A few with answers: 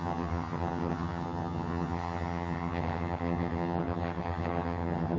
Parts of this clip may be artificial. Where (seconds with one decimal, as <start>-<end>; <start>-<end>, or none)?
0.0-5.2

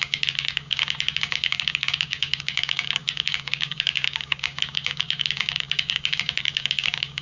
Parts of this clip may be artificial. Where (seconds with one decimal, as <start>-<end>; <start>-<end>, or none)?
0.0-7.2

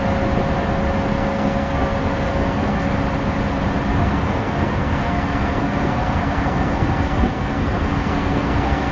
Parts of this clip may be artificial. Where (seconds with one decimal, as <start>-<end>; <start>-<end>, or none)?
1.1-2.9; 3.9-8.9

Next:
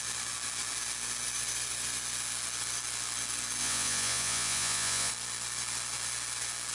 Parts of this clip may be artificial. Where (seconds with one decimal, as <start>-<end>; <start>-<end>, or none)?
3.6-5.1

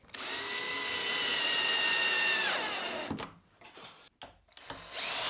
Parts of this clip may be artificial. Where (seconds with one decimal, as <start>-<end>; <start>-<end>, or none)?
1.3-4.2

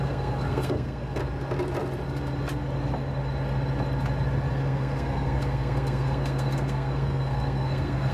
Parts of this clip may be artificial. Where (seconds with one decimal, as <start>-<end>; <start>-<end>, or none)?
0.0-1.2; 4.5-8.1